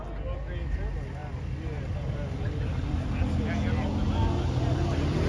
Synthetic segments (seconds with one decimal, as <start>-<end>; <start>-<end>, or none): none